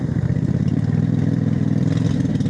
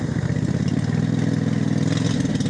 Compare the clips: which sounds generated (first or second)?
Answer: first